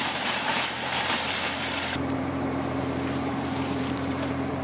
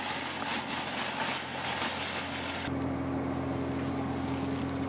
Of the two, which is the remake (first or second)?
first